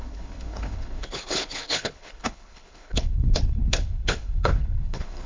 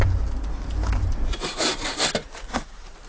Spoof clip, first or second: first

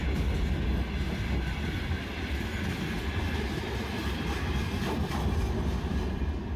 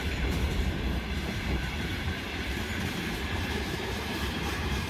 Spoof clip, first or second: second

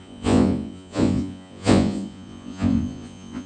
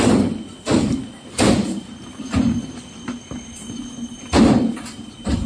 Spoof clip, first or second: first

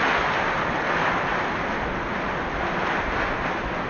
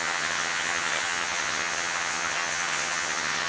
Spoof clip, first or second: second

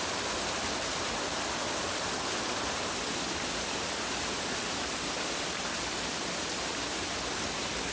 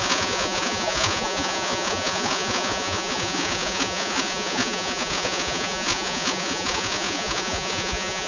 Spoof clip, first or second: second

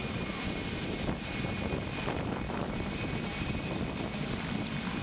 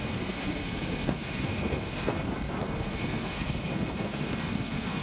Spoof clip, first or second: second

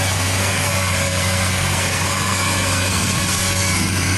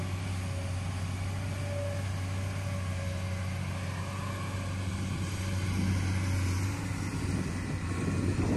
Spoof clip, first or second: first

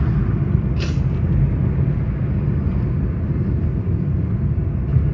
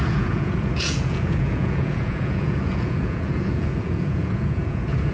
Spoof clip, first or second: second